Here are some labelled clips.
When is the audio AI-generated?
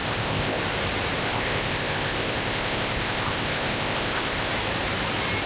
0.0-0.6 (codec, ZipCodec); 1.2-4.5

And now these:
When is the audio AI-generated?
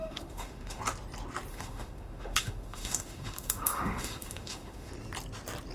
0.0-0.8 (autoencoder, DAC-VAE); 1.5-4.9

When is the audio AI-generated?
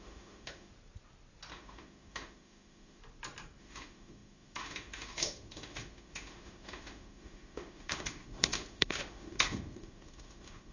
0.0-0.7 (autoencoder, DAC-VAE); 1.5-3.0; 3.6-10.7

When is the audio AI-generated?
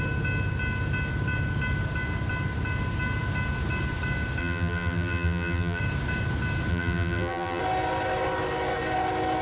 4.4-5.8 (vocoder, BigVGAN v2); 6.7-7.6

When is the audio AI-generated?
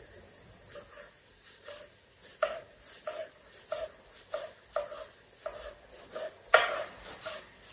none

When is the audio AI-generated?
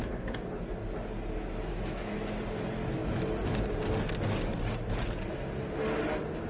1.7-2.3 (autoencoder, DAC-VAE)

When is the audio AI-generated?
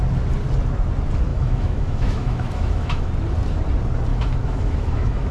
1.3-3.1 (autoencoder, DAC-VAE); 4.1-5.3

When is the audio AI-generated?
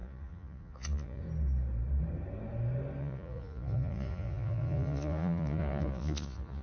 0.0-1.2 (vocoder, Vocos); 3.0-6.6